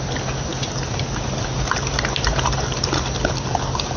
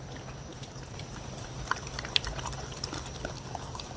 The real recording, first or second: first